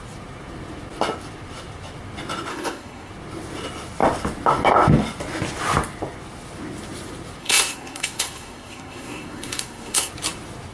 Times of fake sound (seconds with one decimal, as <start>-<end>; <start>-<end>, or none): 2.5-3.1; 7.4-10.1